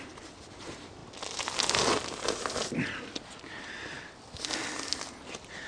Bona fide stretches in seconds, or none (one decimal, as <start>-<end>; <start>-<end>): 0.0-5.7